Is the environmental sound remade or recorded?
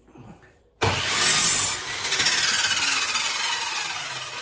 recorded